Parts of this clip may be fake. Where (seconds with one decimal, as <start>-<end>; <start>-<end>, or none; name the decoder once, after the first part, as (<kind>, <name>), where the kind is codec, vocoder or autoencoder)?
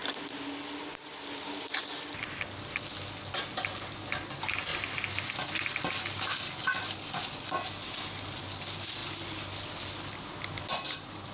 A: none